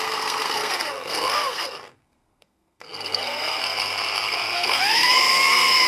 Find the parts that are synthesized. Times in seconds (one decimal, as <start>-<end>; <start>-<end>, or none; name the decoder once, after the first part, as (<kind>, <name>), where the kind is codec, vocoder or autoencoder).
0.0-5.9 (codec, SNAC)